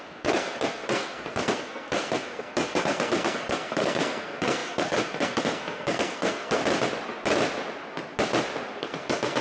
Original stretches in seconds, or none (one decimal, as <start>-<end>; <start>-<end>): 6.6-8.8